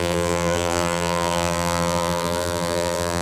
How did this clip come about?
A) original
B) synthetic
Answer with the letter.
B